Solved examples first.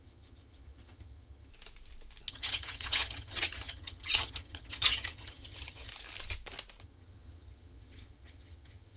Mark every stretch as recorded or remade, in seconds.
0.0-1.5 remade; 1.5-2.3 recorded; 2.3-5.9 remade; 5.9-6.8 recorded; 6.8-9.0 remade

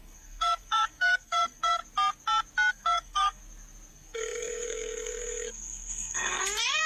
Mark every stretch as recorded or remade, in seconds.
0.0-1.8 remade; 1.8-2.7 recorded; 2.7-3.4 remade; 3.4-3.9 recorded; 3.9-6.4 remade; 6.4-6.9 recorded

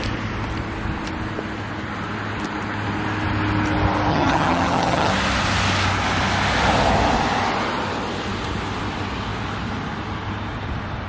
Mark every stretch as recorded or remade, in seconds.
0.0-4.1 recorded; 4.1-5.1 remade; 5.1-11.1 recorded

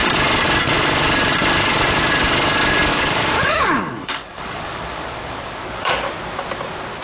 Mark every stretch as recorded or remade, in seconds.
0.0-2.9 recorded; 2.9-6.1 remade; 6.1-7.0 recorded